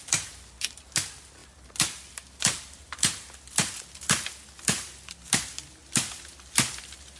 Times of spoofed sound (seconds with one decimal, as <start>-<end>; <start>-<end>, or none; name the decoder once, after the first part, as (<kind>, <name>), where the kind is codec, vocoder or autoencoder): none